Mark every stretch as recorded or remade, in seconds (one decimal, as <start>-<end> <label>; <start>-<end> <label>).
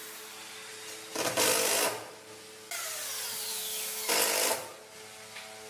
0.0-3.5 recorded; 3.5-4.1 remade; 4.1-5.7 recorded